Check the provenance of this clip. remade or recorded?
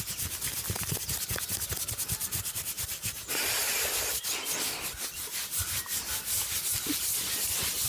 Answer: recorded